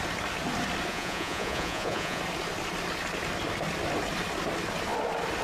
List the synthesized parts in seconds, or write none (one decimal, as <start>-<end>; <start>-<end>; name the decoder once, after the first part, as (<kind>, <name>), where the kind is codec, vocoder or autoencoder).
0.9-2.2 (vocoder, Vocos)